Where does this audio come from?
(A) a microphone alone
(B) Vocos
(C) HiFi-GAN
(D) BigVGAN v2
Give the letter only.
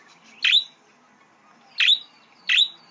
A